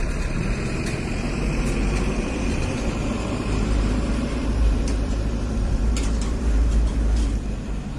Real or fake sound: fake